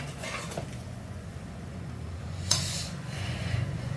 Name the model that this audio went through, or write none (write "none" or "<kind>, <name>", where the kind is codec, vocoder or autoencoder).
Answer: vocoder, Vocos